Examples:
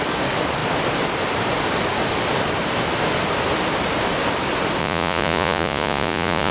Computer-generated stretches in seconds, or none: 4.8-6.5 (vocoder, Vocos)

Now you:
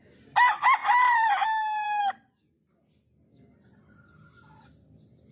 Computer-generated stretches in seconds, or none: 0.8-2.0 (vocoder, BigVGAN v2)

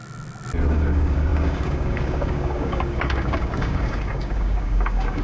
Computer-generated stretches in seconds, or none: 0.7-5.2 (codec, DAC)

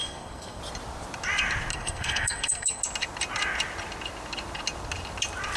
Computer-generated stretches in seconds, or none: 0.0-0.6 (codec, SNAC); 1.7-2.8

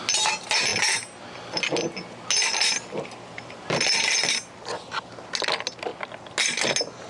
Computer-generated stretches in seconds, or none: none

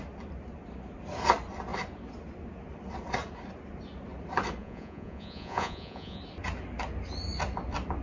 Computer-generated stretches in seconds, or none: 4.6-6.2 (vocoder, Vocos)

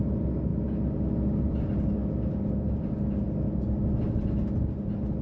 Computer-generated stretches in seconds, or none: none

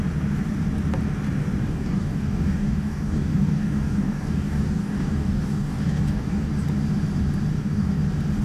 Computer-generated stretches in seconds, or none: 1.6-6.5 (codec, DAC); 7.5-8.0